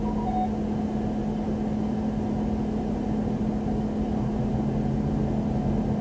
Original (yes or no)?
yes